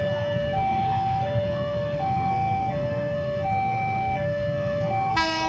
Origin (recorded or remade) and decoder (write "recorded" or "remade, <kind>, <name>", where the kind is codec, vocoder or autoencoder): remade, codec, SNAC